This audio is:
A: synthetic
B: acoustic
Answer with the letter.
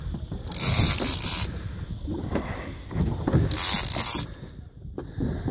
B